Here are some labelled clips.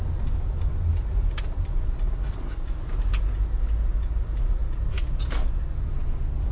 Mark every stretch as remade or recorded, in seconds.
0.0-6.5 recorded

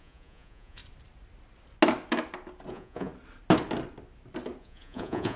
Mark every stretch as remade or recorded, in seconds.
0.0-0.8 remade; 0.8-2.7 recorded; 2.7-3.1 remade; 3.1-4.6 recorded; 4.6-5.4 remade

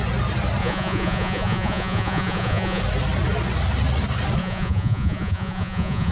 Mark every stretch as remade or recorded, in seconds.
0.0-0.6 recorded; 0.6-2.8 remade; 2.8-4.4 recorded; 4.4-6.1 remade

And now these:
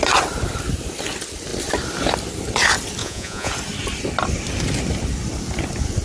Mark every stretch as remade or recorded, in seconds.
0.0-3.0 recorded; 3.0-3.5 remade; 3.5-6.0 recorded

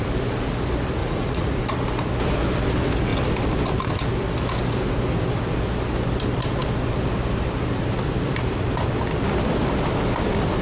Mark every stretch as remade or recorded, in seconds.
0.0-1.0 recorded; 1.0-1.6 remade; 1.6-10.6 recorded

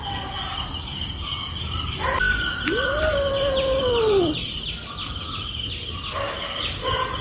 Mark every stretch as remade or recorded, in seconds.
0.0-7.2 recorded

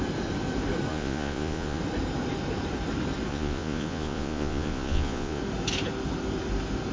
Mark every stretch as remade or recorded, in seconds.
0.0-0.9 recorded; 0.9-1.8 remade; 1.8-3.3 recorded; 3.3-5.4 remade; 5.4-6.9 recorded

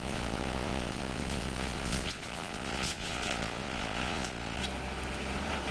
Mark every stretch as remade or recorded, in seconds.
0.0-4.6 remade; 4.6-5.7 recorded